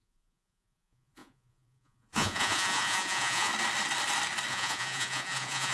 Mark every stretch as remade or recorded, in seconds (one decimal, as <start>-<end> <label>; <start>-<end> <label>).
0.0-3.5 remade; 3.5-4.5 recorded; 4.5-5.7 remade